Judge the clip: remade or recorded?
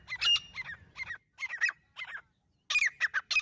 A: recorded